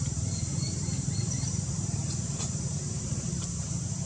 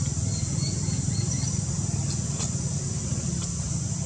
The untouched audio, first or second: second